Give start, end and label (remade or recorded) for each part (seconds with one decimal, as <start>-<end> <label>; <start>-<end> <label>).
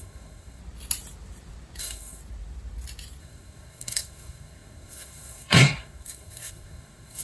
0.0-0.6 remade; 0.6-1.8 recorded; 1.8-2.2 remade; 2.2-3.2 recorded; 3.2-7.2 remade